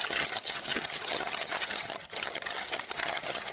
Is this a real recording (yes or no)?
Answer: no